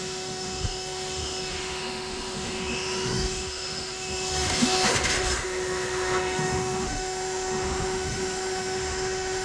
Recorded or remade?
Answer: remade